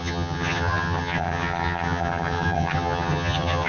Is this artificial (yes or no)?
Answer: yes